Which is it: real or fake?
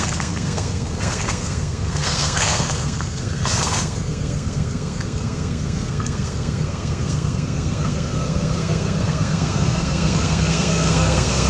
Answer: fake